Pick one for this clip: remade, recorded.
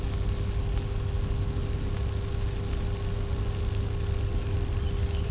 recorded